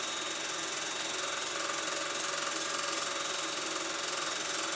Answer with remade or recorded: recorded